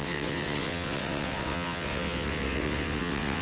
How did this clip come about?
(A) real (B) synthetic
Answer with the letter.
B